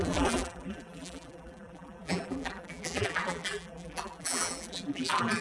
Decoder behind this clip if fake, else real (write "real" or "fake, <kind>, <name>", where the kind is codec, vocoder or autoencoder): fake, vocoder, BigVGAN v2